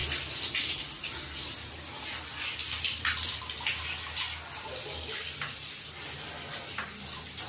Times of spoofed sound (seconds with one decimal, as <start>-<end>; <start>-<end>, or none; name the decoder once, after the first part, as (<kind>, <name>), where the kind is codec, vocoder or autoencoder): none